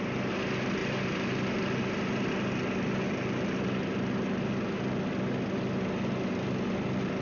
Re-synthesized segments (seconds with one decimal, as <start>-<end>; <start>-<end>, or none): none